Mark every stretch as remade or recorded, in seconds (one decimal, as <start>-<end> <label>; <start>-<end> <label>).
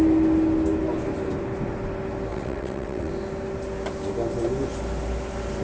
0.0-2.3 recorded; 2.3-3.1 remade; 3.1-5.6 recorded